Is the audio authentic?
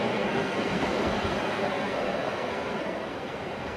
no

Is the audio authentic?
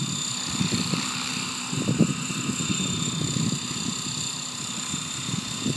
no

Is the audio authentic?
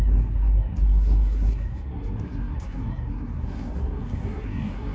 no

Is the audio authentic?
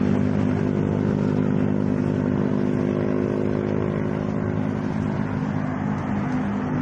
yes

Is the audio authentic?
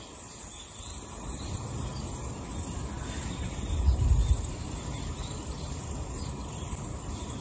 yes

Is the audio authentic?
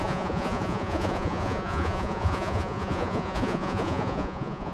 no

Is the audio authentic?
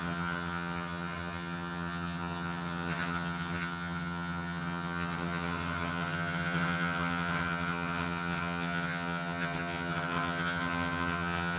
no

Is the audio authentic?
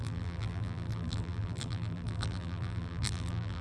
no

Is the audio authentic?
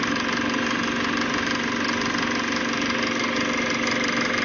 yes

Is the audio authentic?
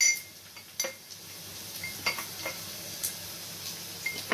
yes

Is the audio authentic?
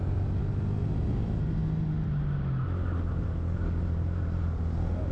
yes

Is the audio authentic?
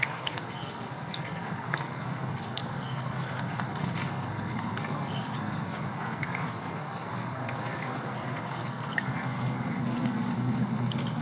no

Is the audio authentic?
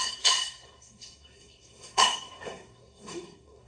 no